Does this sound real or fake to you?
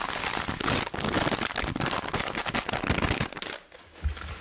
real